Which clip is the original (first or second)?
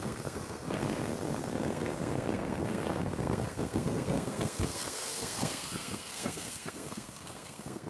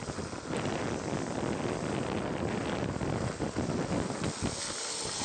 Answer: second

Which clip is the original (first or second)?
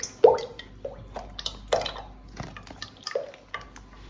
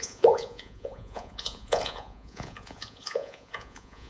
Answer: first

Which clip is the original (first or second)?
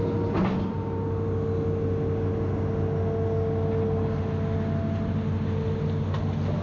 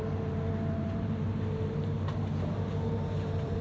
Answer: first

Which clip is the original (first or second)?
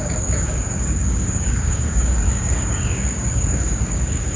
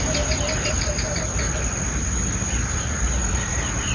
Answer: second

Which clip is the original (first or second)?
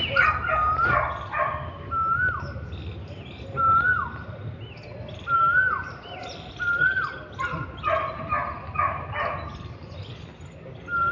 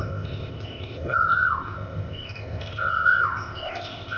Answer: first